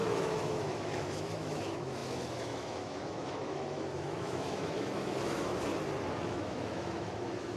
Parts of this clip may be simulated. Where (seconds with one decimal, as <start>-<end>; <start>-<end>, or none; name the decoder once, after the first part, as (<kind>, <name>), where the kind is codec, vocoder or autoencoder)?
0.0-5.7 (autoencoder, DAC-VAE); 6.2-7.6